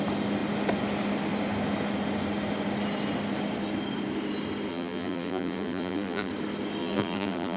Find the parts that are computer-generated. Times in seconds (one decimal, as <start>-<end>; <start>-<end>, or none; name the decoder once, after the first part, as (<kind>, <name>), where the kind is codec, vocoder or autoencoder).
4.7-6.3 (vocoder, BigVGAN v2); 6.8-7.6